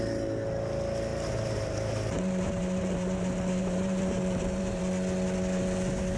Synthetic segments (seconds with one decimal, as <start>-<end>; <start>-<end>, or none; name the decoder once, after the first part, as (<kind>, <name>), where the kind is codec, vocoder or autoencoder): 1.1-4.8 (vocoder, BigVGAN v2)